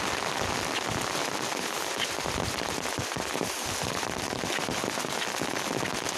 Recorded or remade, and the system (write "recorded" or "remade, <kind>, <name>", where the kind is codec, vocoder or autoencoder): recorded